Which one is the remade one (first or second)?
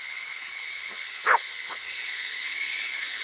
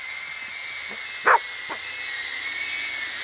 first